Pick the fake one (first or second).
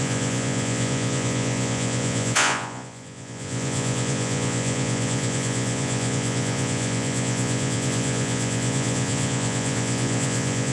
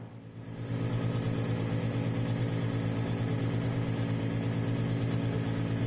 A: first